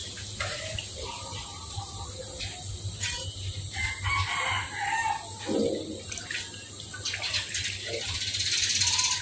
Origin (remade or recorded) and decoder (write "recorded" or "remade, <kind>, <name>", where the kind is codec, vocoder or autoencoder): recorded